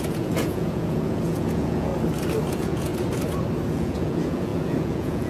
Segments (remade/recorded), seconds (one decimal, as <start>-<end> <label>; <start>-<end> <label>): 0.0-1.9 remade; 1.9-2.5 recorded; 2.5-2.9 remade; 2.9-3.7 recorded; 3.7-5.3 remade